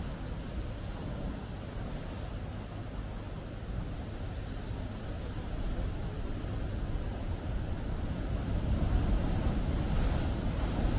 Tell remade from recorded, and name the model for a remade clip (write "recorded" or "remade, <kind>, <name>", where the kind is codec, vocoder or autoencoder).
recorded